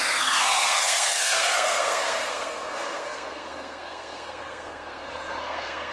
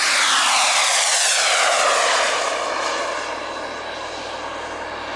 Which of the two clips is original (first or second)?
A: second